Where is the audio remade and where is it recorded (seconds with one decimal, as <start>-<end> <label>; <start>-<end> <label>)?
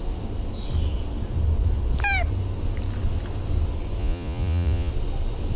0.0-4.0 recorded; 4.0-4.9 remade; 4.9-5.6 recorded